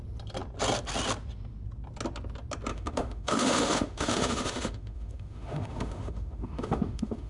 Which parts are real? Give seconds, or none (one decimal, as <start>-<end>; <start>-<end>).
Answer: 0.0-2.7